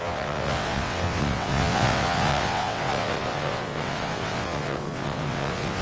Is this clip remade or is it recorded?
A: remade